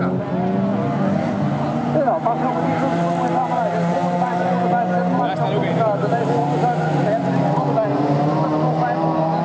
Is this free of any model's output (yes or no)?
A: yes